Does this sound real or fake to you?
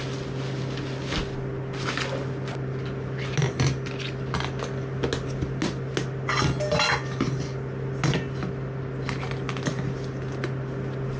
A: real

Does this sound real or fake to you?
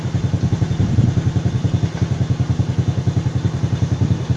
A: real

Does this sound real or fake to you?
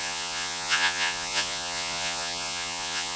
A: fake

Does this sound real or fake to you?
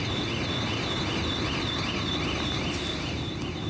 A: real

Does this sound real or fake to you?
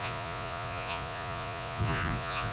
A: fake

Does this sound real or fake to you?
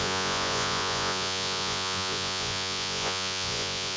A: fake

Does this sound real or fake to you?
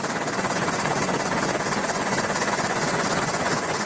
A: fake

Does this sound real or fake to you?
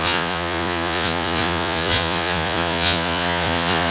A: fake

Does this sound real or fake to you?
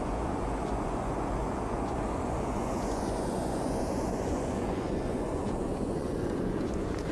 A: fake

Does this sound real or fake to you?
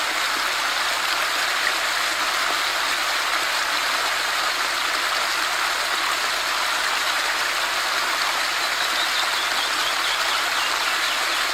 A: real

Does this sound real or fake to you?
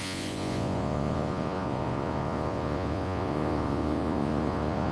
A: fake